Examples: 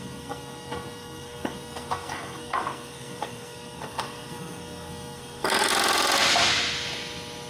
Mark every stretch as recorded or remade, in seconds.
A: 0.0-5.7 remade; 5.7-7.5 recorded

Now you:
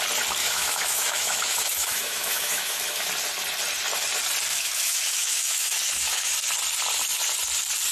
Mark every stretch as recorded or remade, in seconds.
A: 0.0-0.4 recorded; 0.4-3.1 remade; 3.1-4.5 recorded; 4.5-6.3 remade; 6.3-7.9 recorded